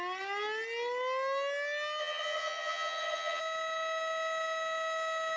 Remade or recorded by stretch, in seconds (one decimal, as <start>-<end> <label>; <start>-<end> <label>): 0.0-2.0 recorded; 2.0-3.4 remade; 3.4-5.4 recorded